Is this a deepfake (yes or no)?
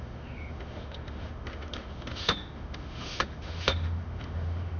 yes